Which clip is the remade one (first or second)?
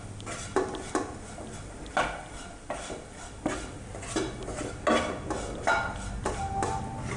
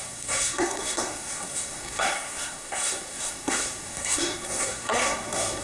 second